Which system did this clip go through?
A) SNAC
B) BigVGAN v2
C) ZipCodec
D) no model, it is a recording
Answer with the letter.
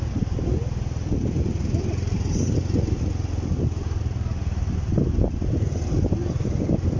D